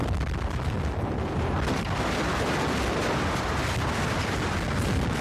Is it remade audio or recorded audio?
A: recorded